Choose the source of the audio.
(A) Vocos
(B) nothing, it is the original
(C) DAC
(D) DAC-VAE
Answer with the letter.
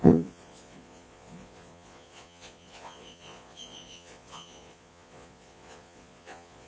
A